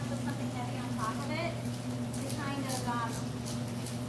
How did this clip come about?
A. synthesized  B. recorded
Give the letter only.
B